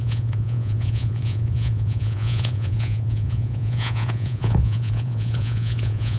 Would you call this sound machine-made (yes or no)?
yes